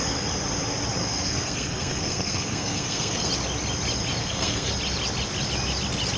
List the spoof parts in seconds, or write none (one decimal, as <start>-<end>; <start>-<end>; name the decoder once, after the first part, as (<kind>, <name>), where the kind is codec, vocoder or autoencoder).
1.0-3.3 (codec, SNAC); 4.2-4.7